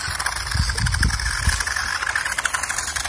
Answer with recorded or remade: recorded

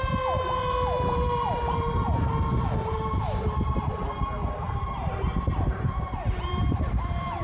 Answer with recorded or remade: remade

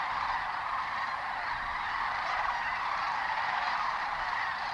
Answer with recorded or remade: remade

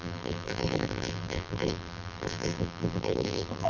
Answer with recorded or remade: remade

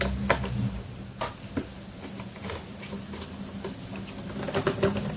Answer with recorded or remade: remade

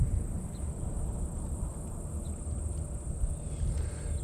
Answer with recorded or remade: recorded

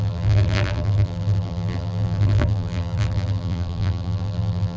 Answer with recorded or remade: remade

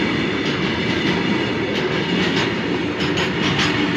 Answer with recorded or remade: recorded